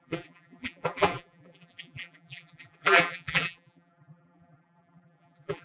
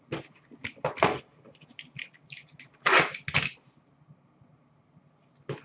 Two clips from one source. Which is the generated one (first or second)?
first